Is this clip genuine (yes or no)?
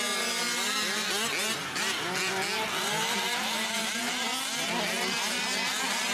yes